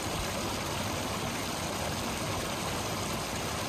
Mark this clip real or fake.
real